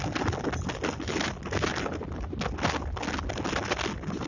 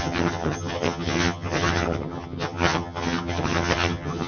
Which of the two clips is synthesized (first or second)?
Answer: second